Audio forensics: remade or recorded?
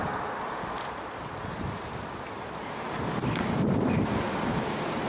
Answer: recorded